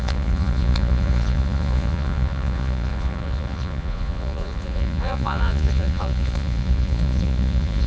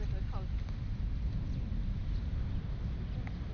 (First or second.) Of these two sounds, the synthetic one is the first